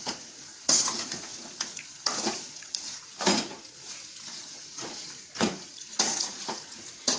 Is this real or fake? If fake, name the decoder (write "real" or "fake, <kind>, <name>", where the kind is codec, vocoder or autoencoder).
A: fake, vocoder, Vocos